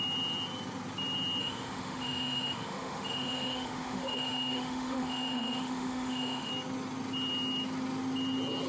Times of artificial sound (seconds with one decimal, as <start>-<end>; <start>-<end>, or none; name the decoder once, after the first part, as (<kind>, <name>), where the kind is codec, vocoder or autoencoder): 1.4-6.5 (autoencoder, DAC-VAE)